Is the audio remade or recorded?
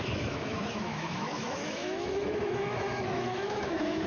remade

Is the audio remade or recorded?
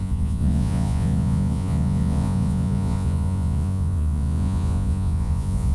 remade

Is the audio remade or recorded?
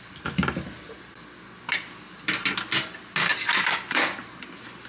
recorded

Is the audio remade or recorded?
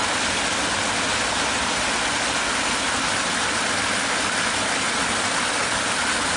recorded